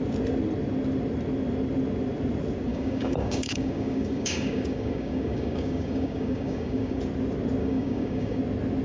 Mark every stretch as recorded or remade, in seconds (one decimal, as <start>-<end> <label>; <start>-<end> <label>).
0.0-2.7 recorded; 2.7-7.0 remade; 7.0-7.6 recorded; 7.6-8.4 remade; 8.4-8.8 recorded